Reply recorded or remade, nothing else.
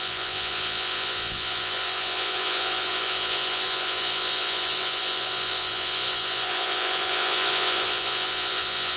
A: remade